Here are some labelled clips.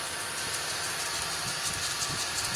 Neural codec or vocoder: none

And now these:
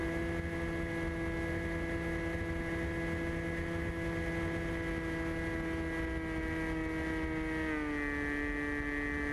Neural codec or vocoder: none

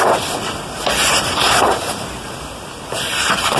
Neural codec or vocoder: vocoder, BigVGAN v2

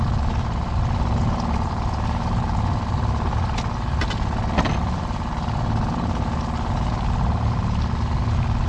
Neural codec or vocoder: none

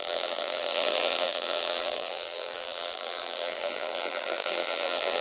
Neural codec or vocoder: vocoder, BigVGAN v2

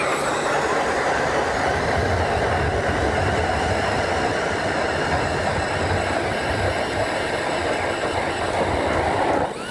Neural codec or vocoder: none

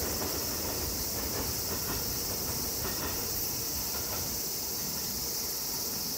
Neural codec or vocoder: vocoder, BigVGAN v2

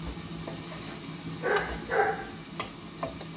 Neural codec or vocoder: none